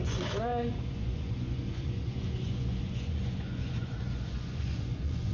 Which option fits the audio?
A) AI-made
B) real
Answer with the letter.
A